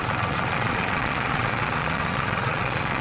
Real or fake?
fake